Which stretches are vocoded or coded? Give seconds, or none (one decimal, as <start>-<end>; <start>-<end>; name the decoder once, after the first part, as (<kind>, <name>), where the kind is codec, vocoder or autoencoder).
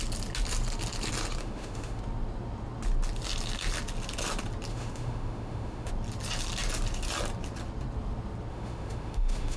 1.4-2.0 (autoencoder, DAC-VAE); 4.7-5.9; 8.5-9.6